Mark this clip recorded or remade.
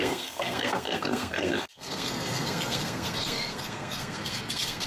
remade